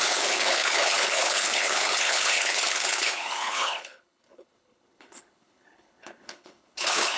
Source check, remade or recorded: remade